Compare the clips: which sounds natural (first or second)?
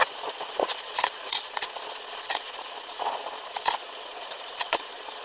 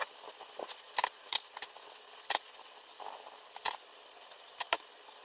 second